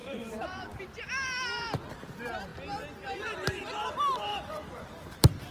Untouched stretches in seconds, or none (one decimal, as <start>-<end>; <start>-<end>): 0.8-4.3